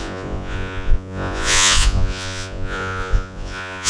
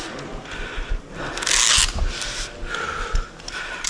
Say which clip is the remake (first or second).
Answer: first